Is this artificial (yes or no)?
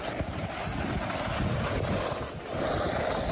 no